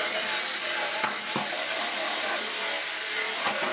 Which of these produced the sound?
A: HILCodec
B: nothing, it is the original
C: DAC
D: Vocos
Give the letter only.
B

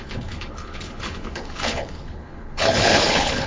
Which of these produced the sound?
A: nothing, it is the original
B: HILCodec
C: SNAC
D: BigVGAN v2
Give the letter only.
B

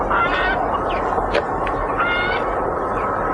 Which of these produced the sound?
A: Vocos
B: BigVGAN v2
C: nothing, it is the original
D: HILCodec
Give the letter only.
C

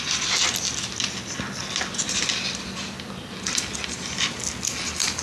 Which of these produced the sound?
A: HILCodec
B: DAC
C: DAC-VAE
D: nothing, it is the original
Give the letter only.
D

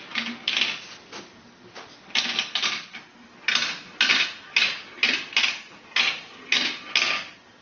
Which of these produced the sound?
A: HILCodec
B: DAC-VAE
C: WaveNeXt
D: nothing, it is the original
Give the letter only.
D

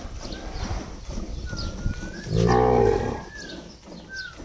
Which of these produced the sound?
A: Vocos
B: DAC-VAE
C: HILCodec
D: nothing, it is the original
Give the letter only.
D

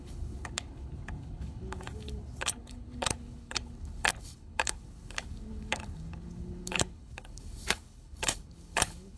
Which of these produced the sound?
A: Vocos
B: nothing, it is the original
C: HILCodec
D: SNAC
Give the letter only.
C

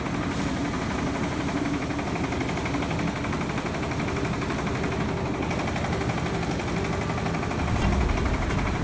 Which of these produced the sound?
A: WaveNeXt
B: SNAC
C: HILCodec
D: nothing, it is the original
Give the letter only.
D